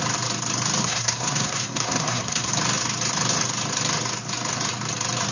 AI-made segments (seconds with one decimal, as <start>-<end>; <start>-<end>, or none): 0.8-2.5